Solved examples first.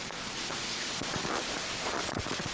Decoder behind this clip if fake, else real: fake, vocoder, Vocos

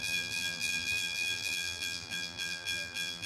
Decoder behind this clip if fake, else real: fake, vocoder, BigVGAN v2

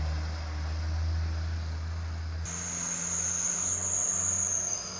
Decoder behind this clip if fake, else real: real